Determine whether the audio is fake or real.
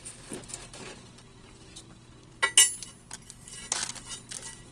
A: real